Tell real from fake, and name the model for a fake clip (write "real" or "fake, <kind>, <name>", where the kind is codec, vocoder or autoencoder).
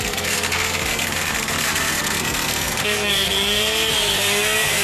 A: fake, codec, SNAC